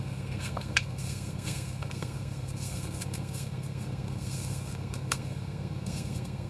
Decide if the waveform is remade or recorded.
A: remade